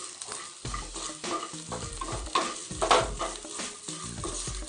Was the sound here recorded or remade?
recorded